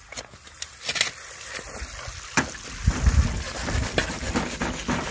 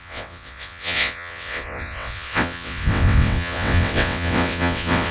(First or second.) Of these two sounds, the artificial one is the second